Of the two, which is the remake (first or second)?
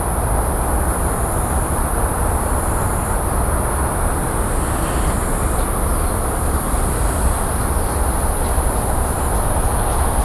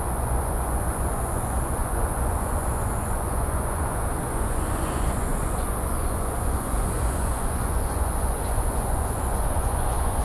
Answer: second